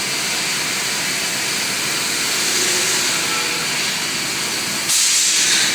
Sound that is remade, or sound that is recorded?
recorded